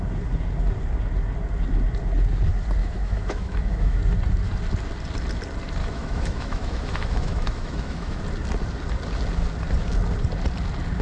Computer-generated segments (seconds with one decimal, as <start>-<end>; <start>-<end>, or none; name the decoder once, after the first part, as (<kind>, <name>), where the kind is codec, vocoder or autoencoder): 2.8-4.0 (autoencoder, DAC-VAE); 5.8-8.2